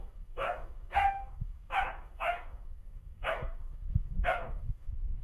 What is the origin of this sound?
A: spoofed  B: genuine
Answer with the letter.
A